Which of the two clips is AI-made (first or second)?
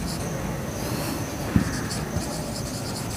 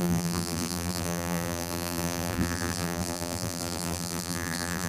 second